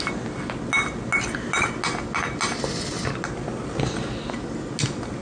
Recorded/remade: recorded